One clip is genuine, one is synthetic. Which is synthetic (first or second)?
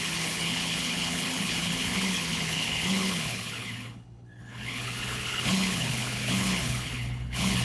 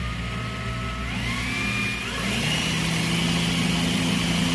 first